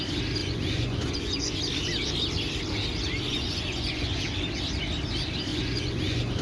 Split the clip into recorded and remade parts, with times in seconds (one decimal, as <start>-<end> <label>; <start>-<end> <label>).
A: 0.0-0.4 recorded; 0.4-1.6 remade; 1.6-3.3 recorded; 3.3-4.2 remade; 4.2-5.5 recorded; 5.5-6.4 remade